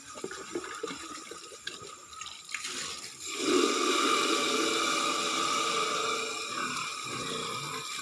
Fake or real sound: fake